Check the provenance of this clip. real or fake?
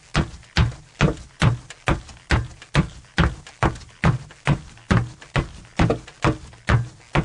real